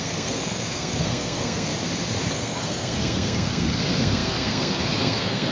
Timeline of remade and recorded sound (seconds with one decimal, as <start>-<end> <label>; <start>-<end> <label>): 0.0-1.7 remade; 1.7-2.3 recorded; 2.3-5.5 remade